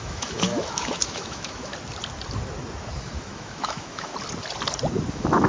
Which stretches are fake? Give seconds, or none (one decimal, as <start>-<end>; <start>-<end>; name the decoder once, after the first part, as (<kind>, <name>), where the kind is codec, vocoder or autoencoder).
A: 0.0-1.7 (autoencoder, DAC-VAE); 3.0-4.1; 5.1-5.5